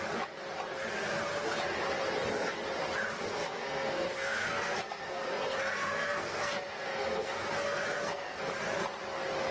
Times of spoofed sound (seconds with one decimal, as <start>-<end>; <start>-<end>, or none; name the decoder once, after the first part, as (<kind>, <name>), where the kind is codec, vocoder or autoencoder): 3.3-8.4 (codec, SNAC)